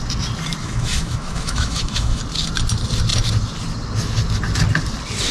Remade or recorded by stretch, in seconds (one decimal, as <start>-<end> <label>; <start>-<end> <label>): 0.0-0.6 recorded; 0.6-2.2 remade; 2.2-5.3 recorded